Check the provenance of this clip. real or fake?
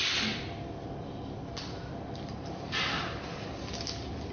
real